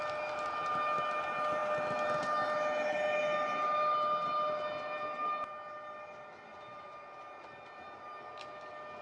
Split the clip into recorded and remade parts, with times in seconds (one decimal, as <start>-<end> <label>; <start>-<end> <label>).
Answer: 0.0-9.0 recorded